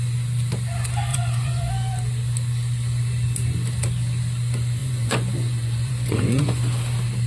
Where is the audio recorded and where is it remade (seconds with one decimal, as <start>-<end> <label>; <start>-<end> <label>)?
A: 0.0-1.1 recorded; 1.1-1.7 remade; 1.7-4.8 recorded; 4.8-6.6 remade; 6.6-7.3 recorded